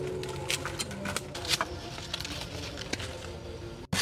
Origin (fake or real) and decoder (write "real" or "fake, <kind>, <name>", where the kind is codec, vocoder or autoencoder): real